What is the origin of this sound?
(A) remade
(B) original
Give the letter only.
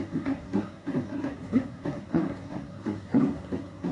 A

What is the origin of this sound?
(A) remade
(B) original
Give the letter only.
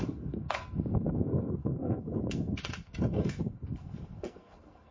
A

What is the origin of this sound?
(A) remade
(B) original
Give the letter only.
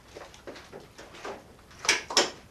B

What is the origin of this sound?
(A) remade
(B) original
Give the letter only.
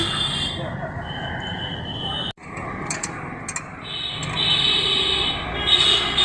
B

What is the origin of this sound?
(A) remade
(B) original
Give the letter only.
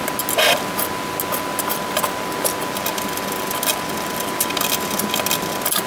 B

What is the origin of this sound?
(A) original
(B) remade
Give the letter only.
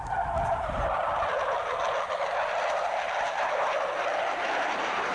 A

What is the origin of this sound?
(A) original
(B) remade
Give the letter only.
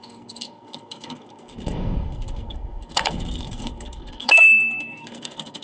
B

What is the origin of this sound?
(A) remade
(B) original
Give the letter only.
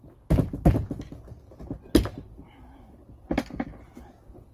B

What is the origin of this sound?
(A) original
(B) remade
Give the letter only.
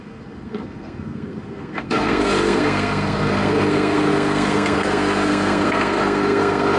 B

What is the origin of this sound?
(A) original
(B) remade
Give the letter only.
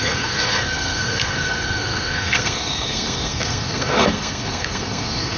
B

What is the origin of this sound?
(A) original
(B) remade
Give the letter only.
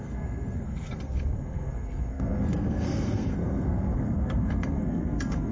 B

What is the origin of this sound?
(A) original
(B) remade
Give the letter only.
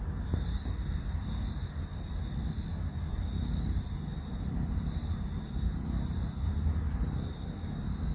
A